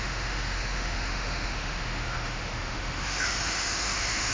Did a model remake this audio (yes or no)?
yes